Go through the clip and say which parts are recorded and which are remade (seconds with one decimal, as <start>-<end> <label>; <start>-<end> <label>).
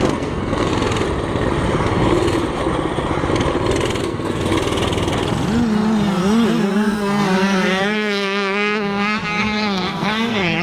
0.0-0.7 remade; 0.7-4.0 recorded; 4.0-4.5 remade; 4.5-6.6 recorded; 6.6-10.6 remade